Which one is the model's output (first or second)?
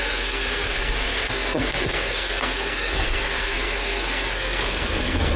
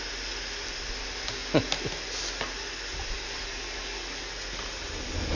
first